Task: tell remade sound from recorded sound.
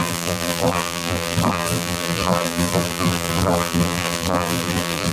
remade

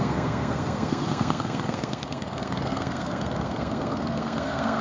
remade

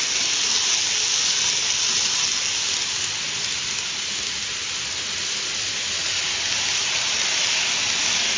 recorded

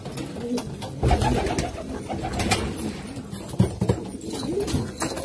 recorded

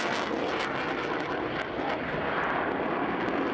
recorded